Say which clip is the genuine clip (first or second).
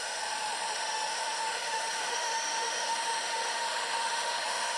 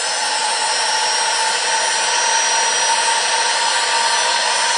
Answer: second